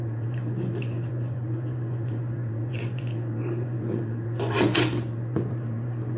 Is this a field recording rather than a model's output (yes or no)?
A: no